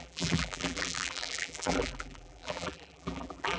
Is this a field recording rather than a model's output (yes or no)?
no